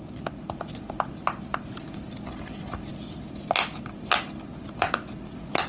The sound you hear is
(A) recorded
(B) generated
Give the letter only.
A